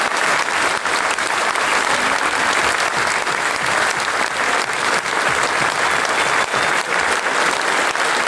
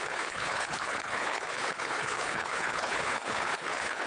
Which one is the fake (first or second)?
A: second